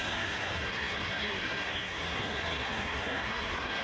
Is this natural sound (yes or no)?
no